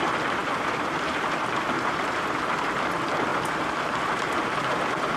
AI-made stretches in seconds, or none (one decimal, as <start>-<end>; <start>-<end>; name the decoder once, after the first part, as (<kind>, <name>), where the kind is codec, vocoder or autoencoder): 0.4-2.8 (vocoder, BigVGAN v2); 3.3-4.4